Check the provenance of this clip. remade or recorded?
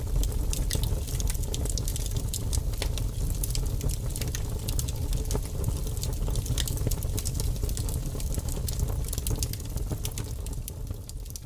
recorded